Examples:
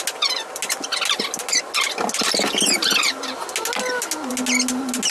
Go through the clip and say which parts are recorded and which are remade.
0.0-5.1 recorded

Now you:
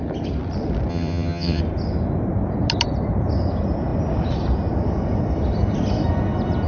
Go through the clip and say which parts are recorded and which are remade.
0.0-0.9 recorded; 0.9-1.6 remade; 1.6-6.7 recorded

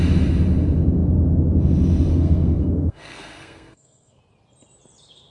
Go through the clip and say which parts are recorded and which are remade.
0.0-2.1 recorded; 2.1-4.2 remade; 4.2-5.3 recorded